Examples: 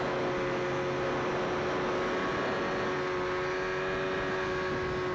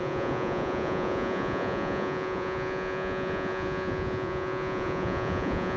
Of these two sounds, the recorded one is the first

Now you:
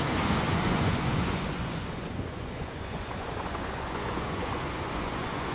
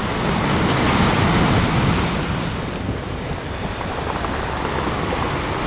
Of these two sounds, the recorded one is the second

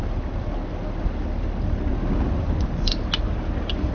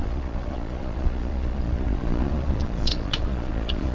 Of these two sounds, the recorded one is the first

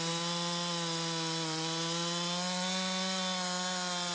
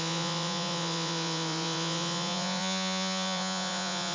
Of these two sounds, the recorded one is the first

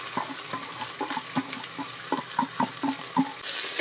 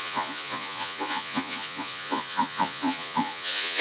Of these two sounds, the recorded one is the first